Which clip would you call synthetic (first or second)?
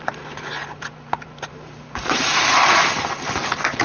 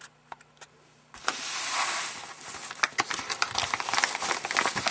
first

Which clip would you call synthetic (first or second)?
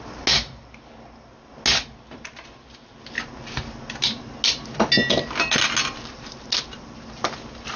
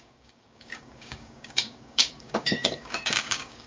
second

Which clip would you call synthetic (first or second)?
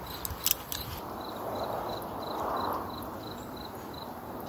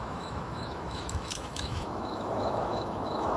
second